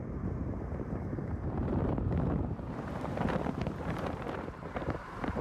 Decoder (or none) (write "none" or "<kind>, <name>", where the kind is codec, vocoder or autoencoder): vocoder, BigVGAN v2